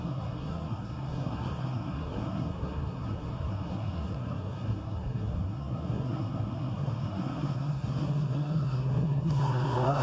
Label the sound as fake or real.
fake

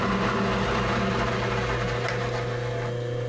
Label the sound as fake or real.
real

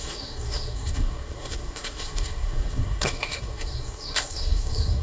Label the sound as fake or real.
fake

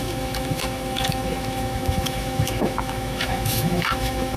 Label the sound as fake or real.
fake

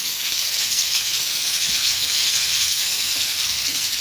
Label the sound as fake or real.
fake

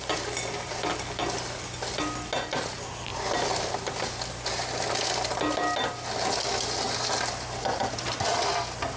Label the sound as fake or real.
real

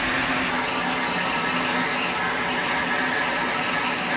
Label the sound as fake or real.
real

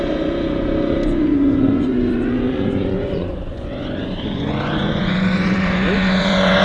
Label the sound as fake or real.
fake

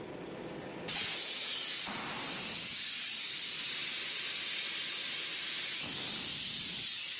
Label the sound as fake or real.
real